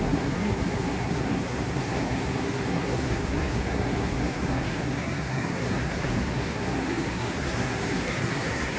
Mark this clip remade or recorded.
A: remade